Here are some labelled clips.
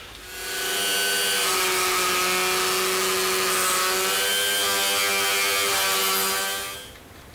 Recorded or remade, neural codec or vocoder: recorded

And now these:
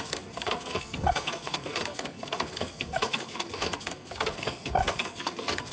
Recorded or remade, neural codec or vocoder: remade, codec, SNAC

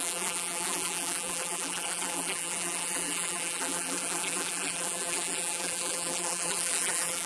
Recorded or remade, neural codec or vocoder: remade, vocoder, BigVGAN v2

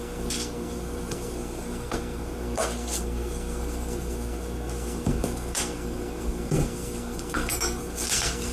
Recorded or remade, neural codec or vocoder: remade, codec, SNAC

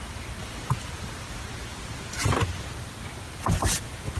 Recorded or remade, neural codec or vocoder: recorded